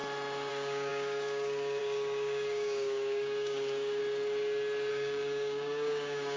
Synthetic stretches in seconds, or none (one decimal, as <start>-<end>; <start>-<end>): 0.5-4.0; 4.9-6.4